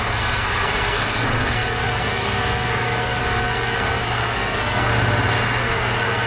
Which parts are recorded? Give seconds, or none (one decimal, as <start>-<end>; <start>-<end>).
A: 4.9-5.6